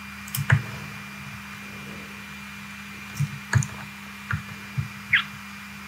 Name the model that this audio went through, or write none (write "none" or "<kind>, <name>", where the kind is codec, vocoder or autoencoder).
none